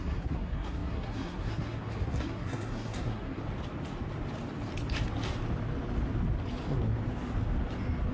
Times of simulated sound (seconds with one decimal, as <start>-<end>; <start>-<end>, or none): 0.0-3.4